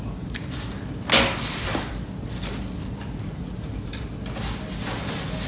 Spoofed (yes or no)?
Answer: no